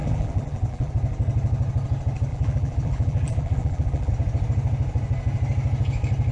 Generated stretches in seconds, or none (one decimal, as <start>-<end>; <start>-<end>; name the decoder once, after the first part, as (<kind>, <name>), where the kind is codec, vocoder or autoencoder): 0.0-0.9 (vocoder, BigVGAN v2); 2.3-4.1

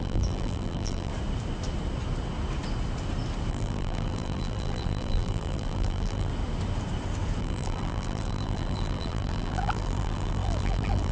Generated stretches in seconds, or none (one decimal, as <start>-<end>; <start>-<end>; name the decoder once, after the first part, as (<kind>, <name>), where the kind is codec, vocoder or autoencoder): 0.0-1.1 (vocoder, BigVGAN v2); 3.5-6.3; 7.4-11.1

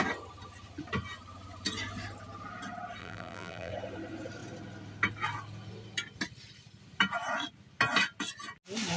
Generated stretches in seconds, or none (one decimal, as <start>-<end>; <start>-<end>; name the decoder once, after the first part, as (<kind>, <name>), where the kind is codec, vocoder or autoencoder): 3.0-3.7 (vocoder, BigVGAN v2)

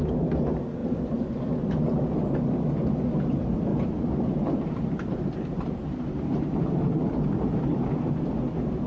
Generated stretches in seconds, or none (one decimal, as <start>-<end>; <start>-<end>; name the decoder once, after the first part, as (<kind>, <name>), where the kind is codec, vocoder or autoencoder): 3.7-8.2 (vocoder, BigVGAN v2)

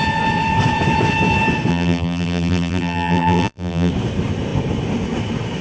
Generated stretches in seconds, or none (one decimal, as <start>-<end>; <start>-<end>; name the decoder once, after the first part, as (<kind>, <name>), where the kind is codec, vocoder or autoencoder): 1.7-3.9 (vocoder, BigVGAN v2)

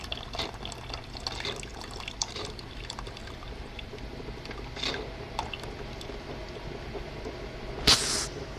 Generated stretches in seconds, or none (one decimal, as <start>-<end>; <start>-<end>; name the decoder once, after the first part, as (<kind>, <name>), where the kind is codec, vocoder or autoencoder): 1.7-3.3 (vocoder, BigVGAN v2)

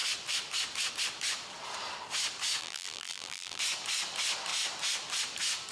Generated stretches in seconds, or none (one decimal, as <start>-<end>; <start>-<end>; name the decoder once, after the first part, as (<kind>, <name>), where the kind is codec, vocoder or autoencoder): 2.6-3.6 (vocoder, BigVGAN v2)